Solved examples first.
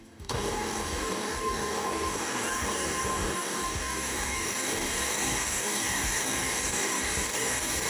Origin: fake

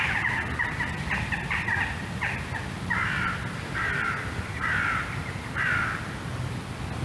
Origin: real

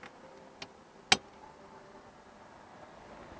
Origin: real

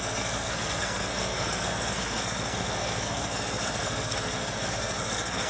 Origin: fake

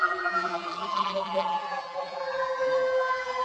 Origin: fake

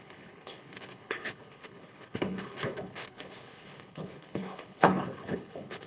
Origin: fake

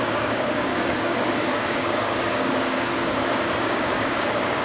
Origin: fake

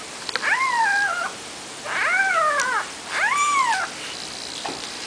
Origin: real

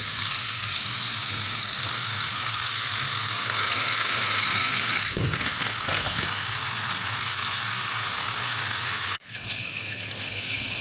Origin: fake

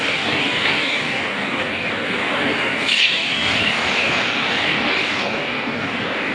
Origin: fake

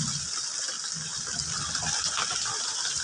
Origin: real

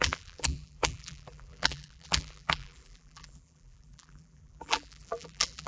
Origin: fake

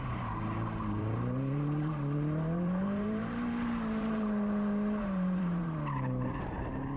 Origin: fake